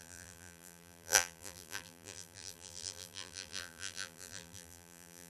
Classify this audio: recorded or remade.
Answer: remade